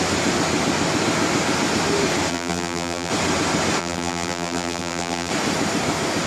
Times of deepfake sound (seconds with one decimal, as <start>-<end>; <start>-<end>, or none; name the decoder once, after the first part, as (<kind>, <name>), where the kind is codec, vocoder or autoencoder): 2.3-3.1 (vocoder, BigVGAN v2); 3.8-5.3